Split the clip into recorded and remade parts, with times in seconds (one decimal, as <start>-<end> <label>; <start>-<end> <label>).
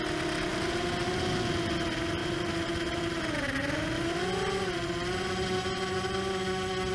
0.0-6.9 recorded